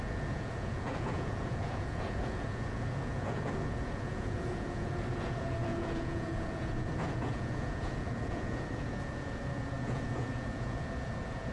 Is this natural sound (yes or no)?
no